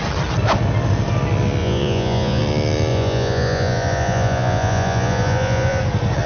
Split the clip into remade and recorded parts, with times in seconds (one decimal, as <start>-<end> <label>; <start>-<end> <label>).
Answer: 0.0-1.6 recorded; 1.6-2.4 remade; 2.4-2.9 recorded; 2.9-5.8 remade; 5.8-6.3 recorded